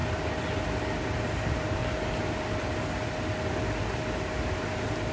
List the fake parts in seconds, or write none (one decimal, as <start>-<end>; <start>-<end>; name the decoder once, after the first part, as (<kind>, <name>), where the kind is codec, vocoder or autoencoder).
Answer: 1.2-1.8 (vocoder, BigVGAN v2)